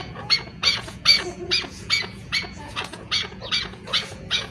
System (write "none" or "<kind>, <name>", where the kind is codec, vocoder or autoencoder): vocoder, Vocos